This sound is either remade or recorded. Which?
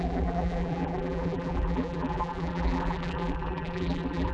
remade